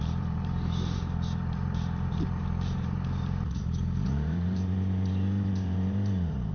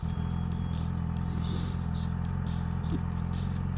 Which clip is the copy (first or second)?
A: first